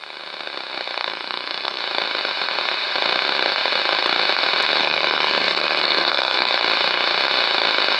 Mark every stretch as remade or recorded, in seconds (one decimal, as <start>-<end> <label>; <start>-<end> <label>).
0.0-1.0 recorded; 1.0-1.8 remade; 1.8-4.8 recorded; 4.8-6.5 remade; 6.5-8.0 recorded